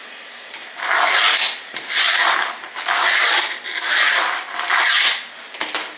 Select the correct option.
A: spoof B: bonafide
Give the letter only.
B